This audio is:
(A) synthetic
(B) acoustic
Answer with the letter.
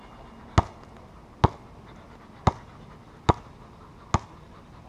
B